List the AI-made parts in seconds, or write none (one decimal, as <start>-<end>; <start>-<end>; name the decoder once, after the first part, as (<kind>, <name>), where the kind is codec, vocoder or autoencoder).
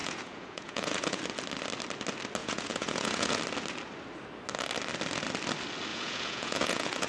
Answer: 0.0-1.2 (vocoder, Vocos); 2.4-3.4; 5.9-7.1